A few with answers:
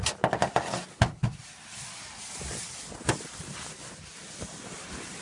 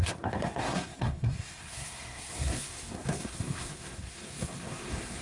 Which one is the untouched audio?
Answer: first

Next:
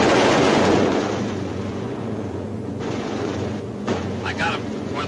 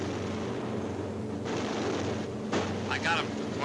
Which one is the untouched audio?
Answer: second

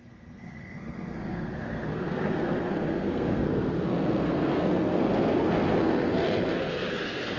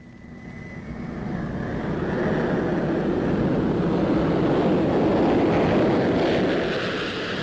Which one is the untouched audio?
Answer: second